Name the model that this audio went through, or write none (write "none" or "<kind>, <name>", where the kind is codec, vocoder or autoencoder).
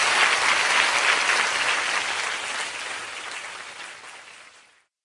none